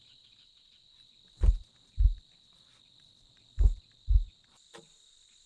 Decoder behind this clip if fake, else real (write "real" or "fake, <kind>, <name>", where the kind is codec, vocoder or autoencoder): real